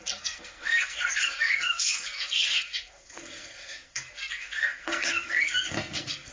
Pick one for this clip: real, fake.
fake